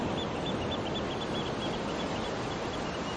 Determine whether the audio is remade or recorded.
recorded